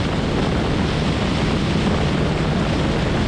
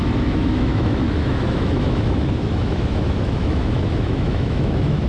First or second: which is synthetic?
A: second